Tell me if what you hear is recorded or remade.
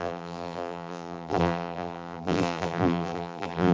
remade